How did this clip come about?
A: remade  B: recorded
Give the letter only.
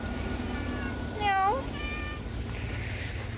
B